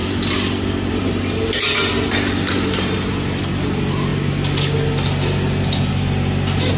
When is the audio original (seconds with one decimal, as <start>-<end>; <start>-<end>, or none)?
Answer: 0.0-6.8